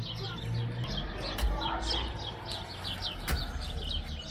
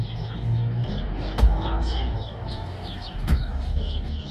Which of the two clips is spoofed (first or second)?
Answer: second